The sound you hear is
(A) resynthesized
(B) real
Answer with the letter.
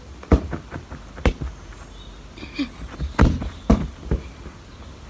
B